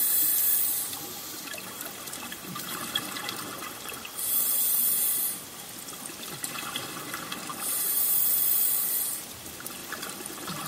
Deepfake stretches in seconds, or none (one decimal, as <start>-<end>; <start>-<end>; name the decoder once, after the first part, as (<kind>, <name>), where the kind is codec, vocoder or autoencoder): 2.3-3.2 (vocoder, BigVGAN v2)